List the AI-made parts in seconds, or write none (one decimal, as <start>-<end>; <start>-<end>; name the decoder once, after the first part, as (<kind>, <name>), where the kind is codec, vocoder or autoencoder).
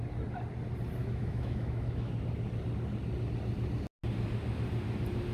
1.0-2.1 (autoencoder, DAC-VAE)